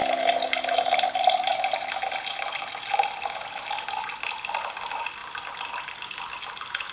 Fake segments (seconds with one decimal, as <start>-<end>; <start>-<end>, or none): none